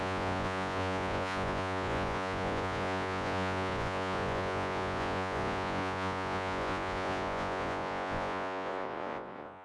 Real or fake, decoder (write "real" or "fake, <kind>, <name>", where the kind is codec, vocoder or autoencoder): fake, vocoder, Vocos